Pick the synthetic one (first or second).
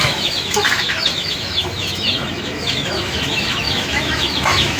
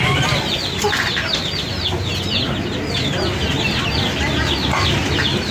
first